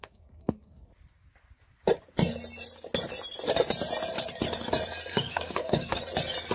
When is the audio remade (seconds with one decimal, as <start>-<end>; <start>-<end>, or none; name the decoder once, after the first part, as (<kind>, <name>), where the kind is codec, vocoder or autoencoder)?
0.0-0.9 (codec, SNAC); 5.1-6.0